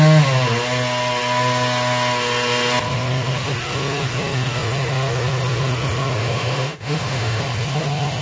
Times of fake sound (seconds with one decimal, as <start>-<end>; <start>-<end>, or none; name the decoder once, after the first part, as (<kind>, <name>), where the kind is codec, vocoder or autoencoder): 6.2-7.4 (autoencoder, DAC-VAE)